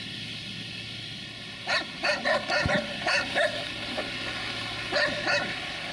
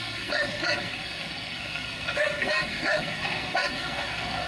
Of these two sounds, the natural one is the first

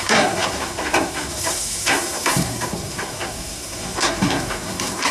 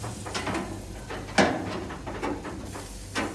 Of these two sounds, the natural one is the second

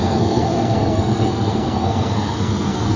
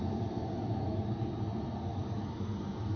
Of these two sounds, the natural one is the second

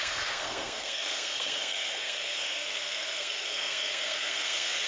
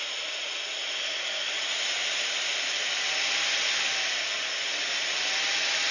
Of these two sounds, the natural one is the second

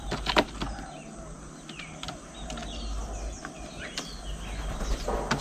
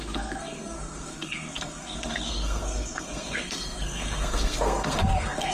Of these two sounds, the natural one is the first